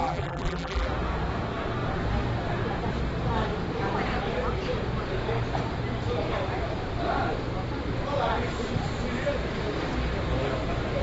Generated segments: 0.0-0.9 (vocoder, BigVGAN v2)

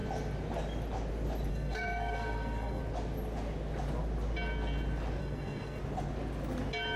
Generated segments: 1.5-2.8 (codec, SNAC); 5.2-5.8

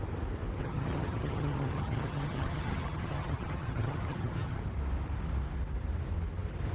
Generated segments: 0.6-4.6 (vocoder, HiFi-GAN)

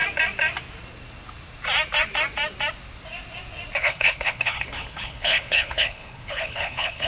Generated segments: 3.8-7.1 (codec, HILCodec)

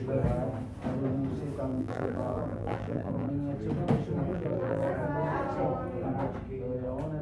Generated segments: 1.7-3.3 (vocoder, BigVGAN v2); 4.3-4.9

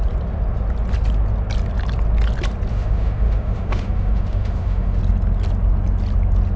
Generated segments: 2.7-5.0 (autoencoder, DAC-VAE)

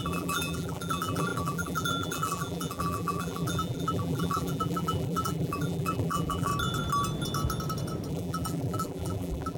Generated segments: 0.0-6.5 (vocoder, BigVGAN v2); 8.1-9.6